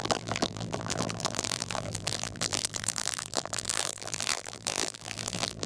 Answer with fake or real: fake